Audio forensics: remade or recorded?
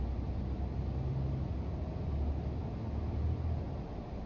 recorded